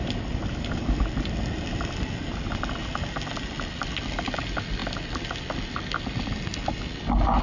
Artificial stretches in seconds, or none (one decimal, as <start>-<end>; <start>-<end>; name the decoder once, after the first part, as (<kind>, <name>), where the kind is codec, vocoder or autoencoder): none